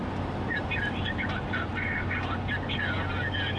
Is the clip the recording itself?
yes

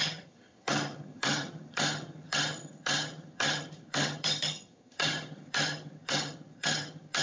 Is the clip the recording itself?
no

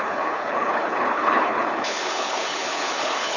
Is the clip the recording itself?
no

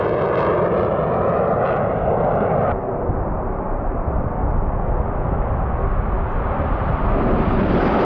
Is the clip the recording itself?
yes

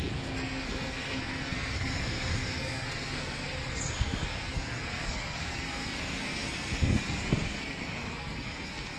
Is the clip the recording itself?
no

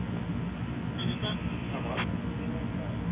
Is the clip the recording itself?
yes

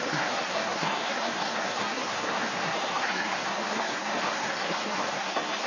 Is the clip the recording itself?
no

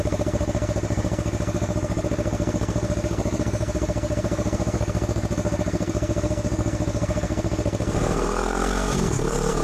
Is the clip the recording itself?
no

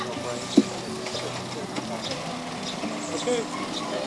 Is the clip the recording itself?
yes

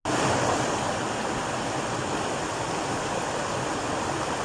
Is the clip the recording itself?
yes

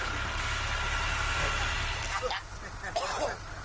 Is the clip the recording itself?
yes